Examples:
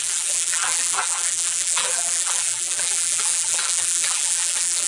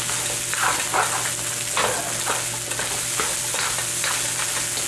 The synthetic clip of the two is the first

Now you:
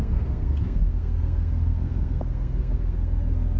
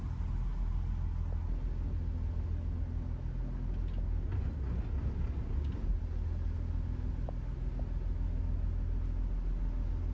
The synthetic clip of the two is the first